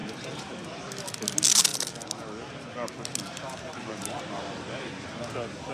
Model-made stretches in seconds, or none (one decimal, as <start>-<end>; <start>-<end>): 0.0-0.8; 3.3-4.9